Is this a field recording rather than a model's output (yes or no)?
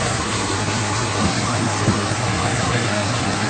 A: no